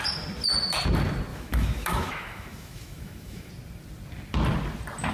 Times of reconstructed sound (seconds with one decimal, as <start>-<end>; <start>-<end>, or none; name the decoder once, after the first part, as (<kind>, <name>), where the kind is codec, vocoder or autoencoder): 1.3-3.5 (autoencoder, DAC-VAE)